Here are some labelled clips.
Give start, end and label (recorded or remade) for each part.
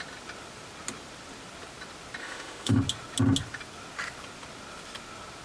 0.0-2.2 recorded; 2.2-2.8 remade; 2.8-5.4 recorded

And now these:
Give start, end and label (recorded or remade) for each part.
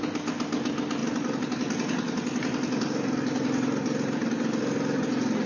0.0-5.5 recorded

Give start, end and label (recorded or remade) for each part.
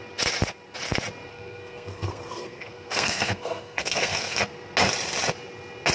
0.0-1.3 recorded; 1.3-4.4 remade; 4.4-5.9 recorded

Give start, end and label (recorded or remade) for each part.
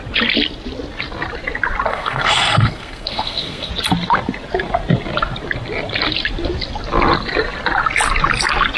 0.0-1.9 recorded; 1.9-3.7 remade; 3.7-8.8 recorded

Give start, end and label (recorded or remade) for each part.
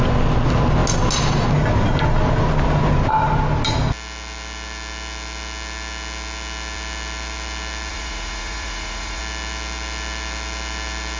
0.0-7.9 recorded; 7.9-9.2 remade; 9.2-11.2 recorded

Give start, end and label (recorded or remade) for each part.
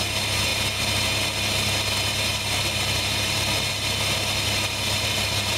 0.0-5.6 recorded